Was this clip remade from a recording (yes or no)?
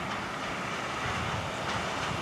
no